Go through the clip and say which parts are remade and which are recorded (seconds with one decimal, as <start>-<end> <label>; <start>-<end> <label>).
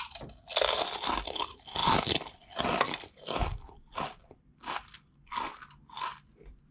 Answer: 0.0-6.7 recorded